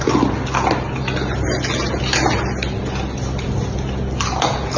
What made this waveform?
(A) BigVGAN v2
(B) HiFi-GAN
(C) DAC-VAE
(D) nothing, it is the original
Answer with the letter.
D